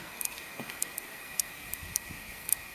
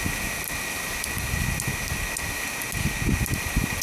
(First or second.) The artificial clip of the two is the first